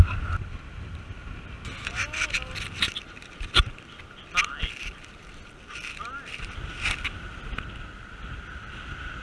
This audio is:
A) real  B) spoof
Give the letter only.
A